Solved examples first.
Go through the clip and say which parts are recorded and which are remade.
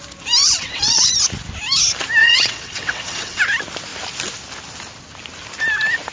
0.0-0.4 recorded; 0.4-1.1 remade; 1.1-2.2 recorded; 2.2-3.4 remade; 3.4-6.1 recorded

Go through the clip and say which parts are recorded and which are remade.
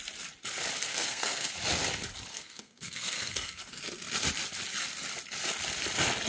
0.0-0.9 recorded; 0.9-1.5 remade; 1.5-2.3 recorded; 2.3-3.8 remade; 3.8-6.3 recorded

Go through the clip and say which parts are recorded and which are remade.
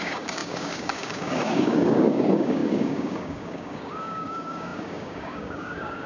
0.0-6.1 remade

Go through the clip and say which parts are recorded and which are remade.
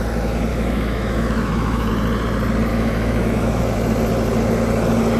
0.0-0.5 recorded; 0.5-1.9 remade; 1.9-2.7 recorded; 2.7-3.6 remade; 3.6-5.2 recorded